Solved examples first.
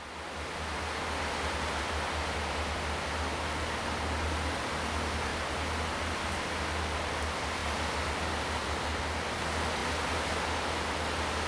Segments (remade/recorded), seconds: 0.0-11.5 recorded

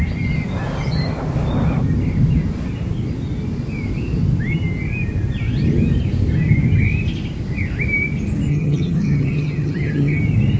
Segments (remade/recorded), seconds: 0.0-8.5 recorded; 8.5-10.2 remade; 10.2-10.6 recorded

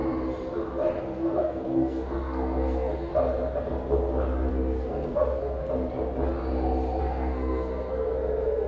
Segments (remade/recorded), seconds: 0.0-1.0 recorded; 1.0-3.1 remade; 3.1-4.5 recorded; 4.5-5.6 remade; 5.6-7.0 recorded; 7.0-8.7 remade

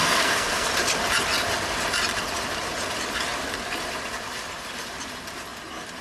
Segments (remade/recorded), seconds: 0.0-0.7 remade; 0.7-6.0 recorded

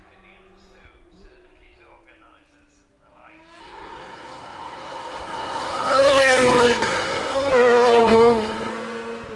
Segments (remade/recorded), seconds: 0.0-3.6 recorded; 3.6-7.5 remade; 7.5-8.0 recorded; 8.0-8.7 remade; 8.7-9.4 recorded

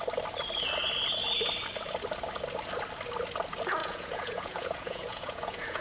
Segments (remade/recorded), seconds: 0.0-3.8 recorded; 3.8-5.8 remade

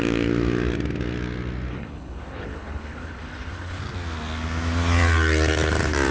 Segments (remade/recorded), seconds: 0.0-1.7 recorded; 1.7-3.8 remade; 3.8-6.1 recorded

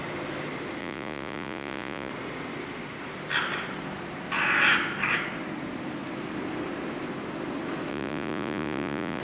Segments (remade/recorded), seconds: 0.0-0.8 recorded; 0.8-2.1 remade; 2.1-7.9 recorded; 7.9-9.2 remade